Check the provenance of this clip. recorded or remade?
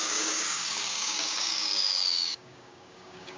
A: remade